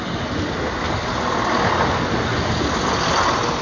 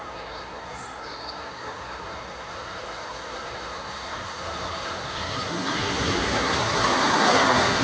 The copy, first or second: second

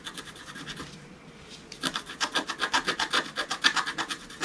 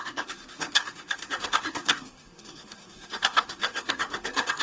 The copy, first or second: second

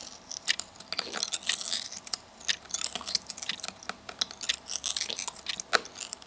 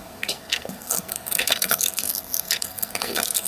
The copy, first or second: second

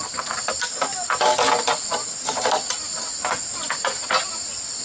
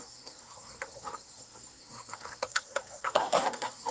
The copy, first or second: second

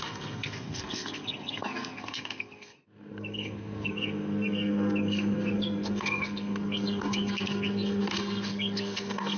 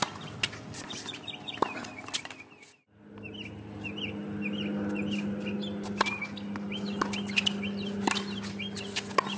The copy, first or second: first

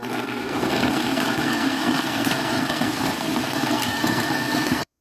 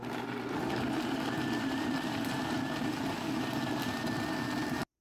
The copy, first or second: first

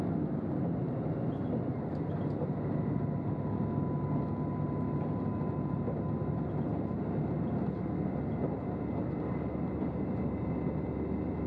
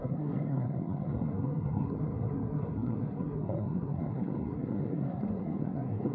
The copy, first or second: second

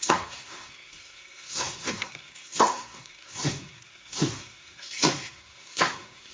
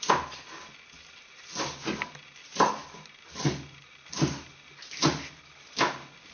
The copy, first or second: first